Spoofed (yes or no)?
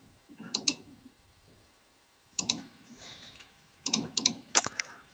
yes